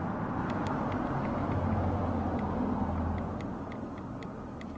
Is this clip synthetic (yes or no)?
no